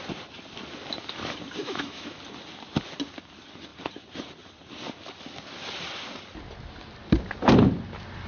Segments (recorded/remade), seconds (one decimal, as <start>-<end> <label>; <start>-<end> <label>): 0.0-1.6 recorded; 1.6-2.2 remade; 2.2-8.3 recorded